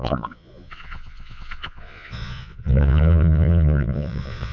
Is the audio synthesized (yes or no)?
yes